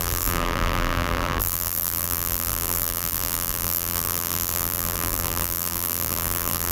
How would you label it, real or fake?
fake